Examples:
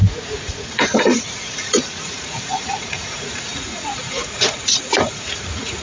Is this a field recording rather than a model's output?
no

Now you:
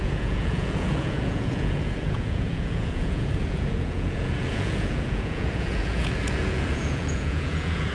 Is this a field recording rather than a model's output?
no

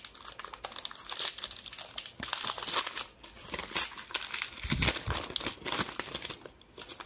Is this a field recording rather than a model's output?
yes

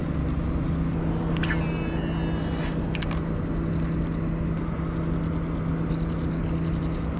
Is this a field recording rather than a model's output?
yes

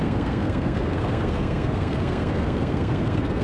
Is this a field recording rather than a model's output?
no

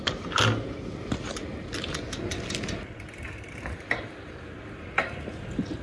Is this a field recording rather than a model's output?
yes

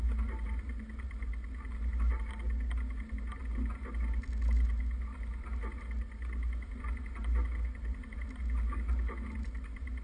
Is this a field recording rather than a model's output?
yes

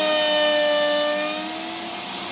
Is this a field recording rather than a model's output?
yes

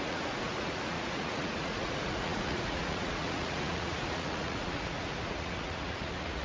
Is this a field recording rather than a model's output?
no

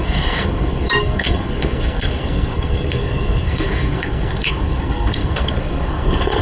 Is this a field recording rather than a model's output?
no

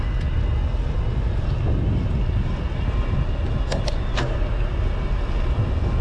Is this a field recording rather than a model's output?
yes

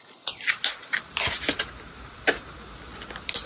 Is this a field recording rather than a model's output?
yes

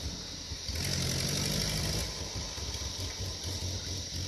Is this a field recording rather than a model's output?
yes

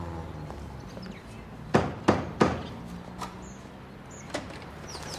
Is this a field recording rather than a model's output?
yes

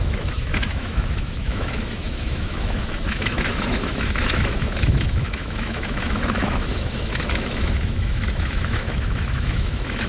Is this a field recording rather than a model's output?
no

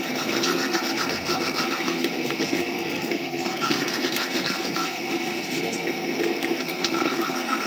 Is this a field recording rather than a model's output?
no